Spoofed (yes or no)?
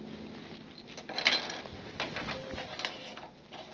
no